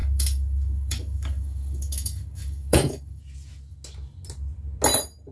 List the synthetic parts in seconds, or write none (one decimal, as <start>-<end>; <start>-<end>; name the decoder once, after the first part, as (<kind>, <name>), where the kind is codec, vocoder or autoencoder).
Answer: 0.0-3.2 (codec, DAC)